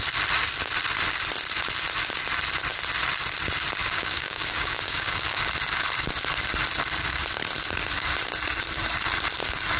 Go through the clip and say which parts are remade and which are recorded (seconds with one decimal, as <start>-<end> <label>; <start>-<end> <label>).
0.0-3.8 recorded; 3.8-5.5 remade; 5.5-9.8 recorded

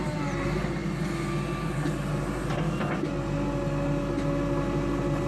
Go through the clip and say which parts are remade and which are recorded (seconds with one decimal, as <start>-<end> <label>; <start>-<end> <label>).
0.0-5.3 recorded

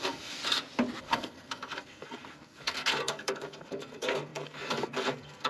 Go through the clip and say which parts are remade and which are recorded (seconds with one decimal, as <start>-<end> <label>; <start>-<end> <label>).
0.0-0.4 remade; 0.4-1.0 recorded; 1.0-5.5 remade

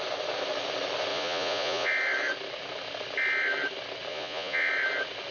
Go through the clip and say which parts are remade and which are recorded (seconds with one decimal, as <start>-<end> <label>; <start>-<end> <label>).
0.0-1.1 recorded; 1.1-1.9 remade; 1.9-4.1 recorded; 4.1-4.7 remade; 4.7-5.3 recorded